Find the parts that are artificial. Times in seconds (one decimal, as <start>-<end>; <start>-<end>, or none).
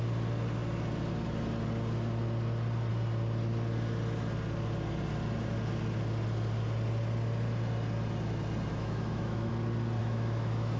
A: 8.7-9.5; 10.0-10.8